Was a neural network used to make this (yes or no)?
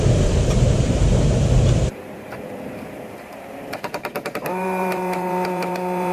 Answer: yes